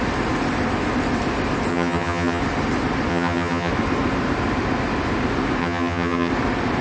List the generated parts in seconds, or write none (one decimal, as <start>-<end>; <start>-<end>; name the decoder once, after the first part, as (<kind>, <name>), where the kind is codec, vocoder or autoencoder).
1.7-2.4 (vocoder, HiFi-GAN); 3.1-3.7; 5.6-6.3